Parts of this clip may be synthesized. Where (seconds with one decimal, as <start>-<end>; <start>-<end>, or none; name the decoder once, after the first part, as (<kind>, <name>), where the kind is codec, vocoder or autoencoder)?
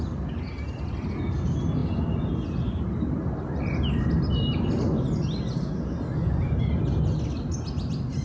none